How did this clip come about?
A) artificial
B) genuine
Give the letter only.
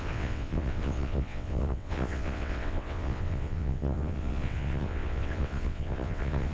A